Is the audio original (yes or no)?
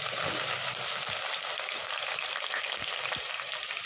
yes